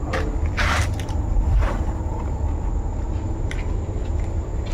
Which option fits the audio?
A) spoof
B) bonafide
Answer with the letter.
B